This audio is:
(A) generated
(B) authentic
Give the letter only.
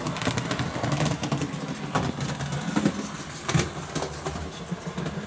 B